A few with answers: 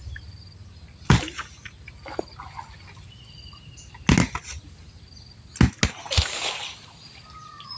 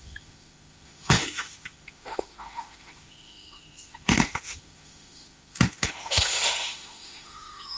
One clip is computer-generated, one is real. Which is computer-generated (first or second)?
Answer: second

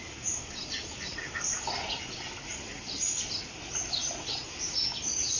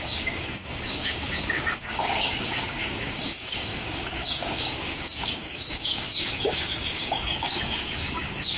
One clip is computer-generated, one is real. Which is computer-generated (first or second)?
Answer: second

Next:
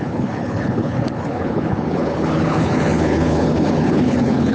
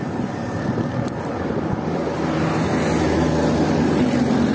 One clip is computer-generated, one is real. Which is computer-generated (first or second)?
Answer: first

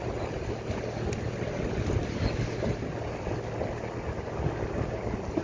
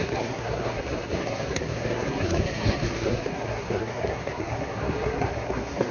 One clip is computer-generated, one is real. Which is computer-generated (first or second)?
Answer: second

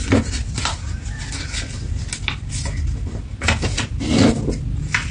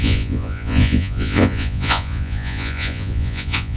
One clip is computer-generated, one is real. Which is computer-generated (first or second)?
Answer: second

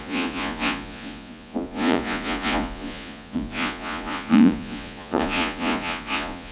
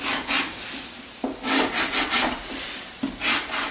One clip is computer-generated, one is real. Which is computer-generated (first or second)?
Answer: first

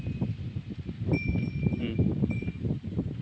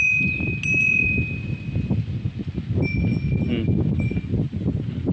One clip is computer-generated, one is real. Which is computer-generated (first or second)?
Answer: first